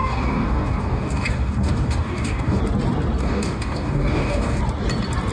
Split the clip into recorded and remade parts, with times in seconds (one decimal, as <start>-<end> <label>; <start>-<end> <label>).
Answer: 0.0-2.6 remade; 2.6-3.2 recorded; 3.2-4.6 remade; 4.6-5.3 recorded